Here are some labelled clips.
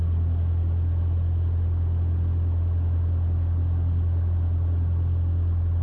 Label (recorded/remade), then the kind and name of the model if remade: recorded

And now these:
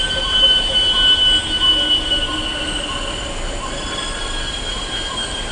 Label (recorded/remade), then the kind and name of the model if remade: remade, vocoder, BigVGAN v2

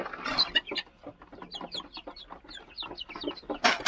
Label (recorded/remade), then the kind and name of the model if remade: recorded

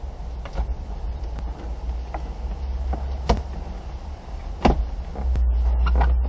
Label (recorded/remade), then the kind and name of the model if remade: recorded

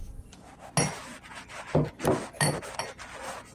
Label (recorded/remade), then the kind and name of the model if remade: recorded